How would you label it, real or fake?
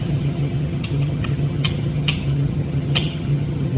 fake